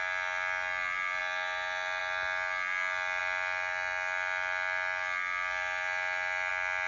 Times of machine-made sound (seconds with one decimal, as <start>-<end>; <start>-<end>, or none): none